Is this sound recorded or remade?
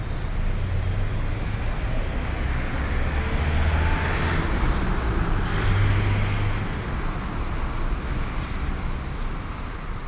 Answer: recorded